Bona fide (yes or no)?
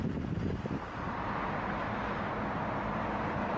yes